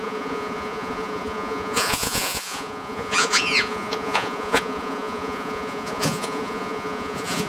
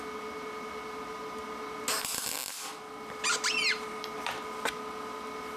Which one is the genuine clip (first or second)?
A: second